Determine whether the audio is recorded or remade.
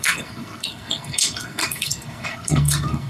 remade